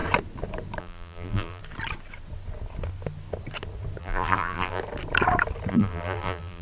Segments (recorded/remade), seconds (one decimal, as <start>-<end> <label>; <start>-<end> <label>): 0.0-0.8 recorded; 0.8-1.6 remade; 1.6-4.0 recorded; 4.0-4.8 remade; 4.8-5.7 recorded; 5.7-6.6 remade